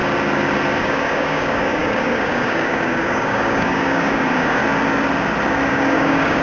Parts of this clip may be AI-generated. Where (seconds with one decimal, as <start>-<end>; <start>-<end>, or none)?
0.8-4.6; 5.7-6.4